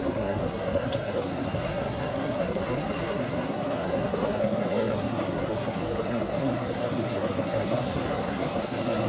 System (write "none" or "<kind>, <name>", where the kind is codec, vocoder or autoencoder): codec, SNAC